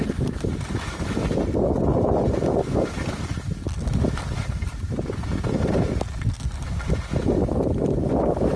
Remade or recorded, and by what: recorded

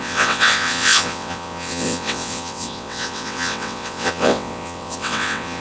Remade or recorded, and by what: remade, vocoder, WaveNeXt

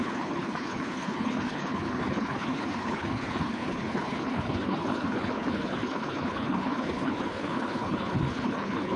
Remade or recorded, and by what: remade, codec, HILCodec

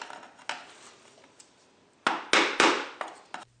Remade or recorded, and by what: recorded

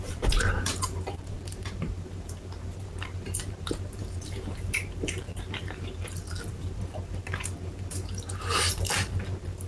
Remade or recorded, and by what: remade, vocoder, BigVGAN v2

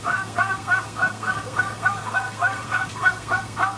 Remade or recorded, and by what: remade, codec, SNAC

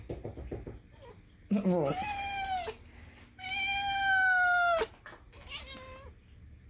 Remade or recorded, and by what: recorded